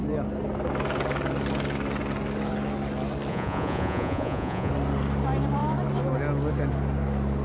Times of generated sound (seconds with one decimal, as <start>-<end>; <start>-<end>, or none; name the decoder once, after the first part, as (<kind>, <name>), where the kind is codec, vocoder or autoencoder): 3.3-4.7 (vocoder, Vocos)